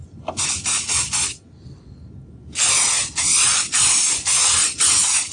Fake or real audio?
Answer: real